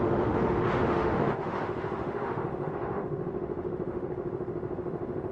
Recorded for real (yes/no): no